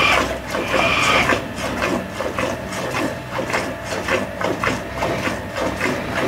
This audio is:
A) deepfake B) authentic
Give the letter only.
B